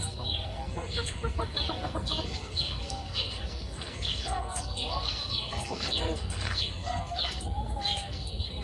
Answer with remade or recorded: remade